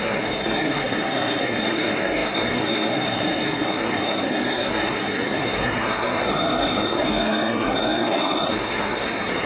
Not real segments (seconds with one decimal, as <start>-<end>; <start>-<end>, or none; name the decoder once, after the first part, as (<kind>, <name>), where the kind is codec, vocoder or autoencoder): 0.0-9.5 (codec, SNAC)